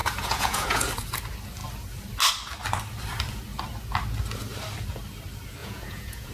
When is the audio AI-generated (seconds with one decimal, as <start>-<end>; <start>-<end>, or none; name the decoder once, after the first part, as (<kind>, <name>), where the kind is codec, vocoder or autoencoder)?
0.0-0.9 (vocoder, Vocos); 5.6-6.3